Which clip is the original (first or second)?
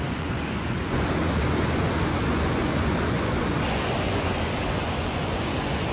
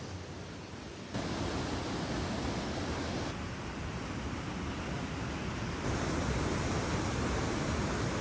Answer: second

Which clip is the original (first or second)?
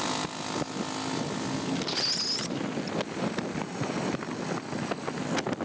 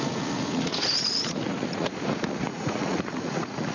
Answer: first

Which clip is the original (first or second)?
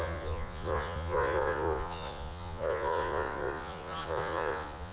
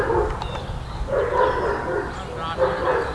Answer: second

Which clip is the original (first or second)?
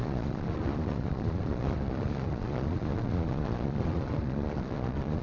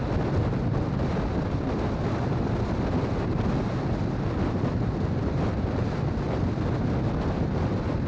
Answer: second